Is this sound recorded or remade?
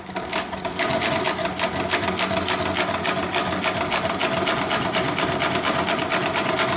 recorded